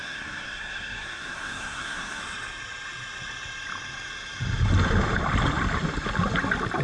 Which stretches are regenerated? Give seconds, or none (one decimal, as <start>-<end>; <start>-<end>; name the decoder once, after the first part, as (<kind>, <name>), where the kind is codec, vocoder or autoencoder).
0.0-2.2 (codec, SNAC)